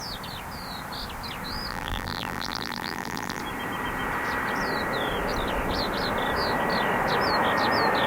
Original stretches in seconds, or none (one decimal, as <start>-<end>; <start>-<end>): 0.0-1.7; 3.4-8.1